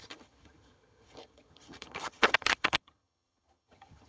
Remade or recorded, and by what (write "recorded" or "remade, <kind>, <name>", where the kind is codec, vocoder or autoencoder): remade, vocoder, HiFi-GAN